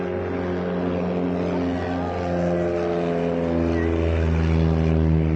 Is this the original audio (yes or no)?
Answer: yes